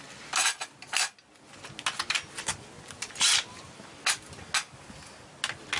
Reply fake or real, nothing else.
real